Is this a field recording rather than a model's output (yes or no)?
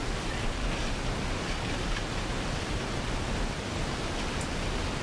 yes